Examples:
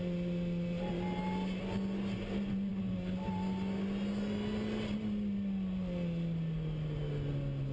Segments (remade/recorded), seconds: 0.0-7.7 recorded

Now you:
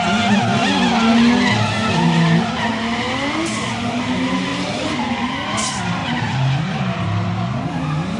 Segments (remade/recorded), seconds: 0.0-4.5 recorded; 4.5-5.3 remade; 5.3-6.0 recorded; 6.0-6.8 remade; 6.8-8.2 recorded

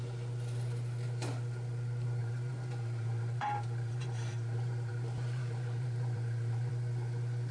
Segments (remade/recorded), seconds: 0.0-2.2 recorded; 2.2-6.7 remade; 6.7-7.5 recorded

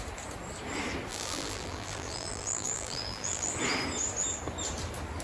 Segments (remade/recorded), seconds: 0.0-1.1 recorded; 1.1-3.5 remade; 3.5-5.2 recorded